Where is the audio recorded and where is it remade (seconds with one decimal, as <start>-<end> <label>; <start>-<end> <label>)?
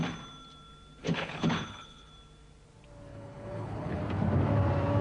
0.0-1.0 recorded; 1.0-2.1 remade; 2.1-3.1 recorded; 3.1-4.0 remade; 4.0-5.0 recorded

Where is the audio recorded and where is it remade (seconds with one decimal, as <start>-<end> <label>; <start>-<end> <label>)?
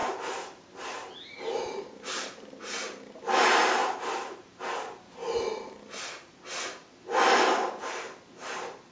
0.0-3.2 remade; 3.2-3.8 recorded; 3.8-4.6 remade; 4.6-8.9 recorded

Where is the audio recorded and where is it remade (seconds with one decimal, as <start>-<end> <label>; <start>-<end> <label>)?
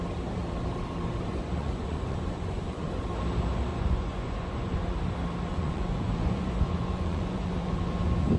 0.0-1.3 recorded; 1.3-3.0 remade; 3.0-3.7 recorded; 3.7-5.0 remade; 5.0-5.5 recorded; 5.5-7.8 remade; 7.8-8.4 recorded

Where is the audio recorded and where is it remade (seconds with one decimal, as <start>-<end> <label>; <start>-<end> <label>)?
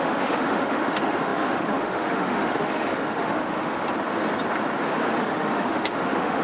0.0-3.8 remade; 3.8-5.2 recorded; 5.2-6.4 remade